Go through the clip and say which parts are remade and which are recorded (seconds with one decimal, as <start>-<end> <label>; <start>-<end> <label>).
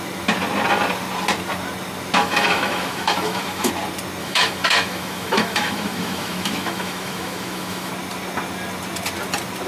0.0-2.2 recorded; 2.2-3.7 remade; 3.7-4.2 recorded; 4.2-7.9 remade; 7.9-9.7 recorded